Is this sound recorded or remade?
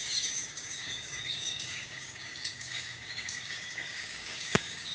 remade